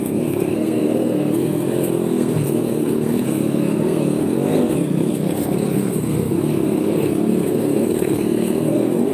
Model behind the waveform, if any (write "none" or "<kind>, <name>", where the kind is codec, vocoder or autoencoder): codec, SNAC